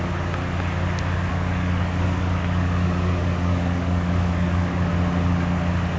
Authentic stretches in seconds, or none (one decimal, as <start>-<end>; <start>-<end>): 0.0-1.3; 4.9-6.0